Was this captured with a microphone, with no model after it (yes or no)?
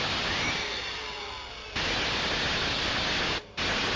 yes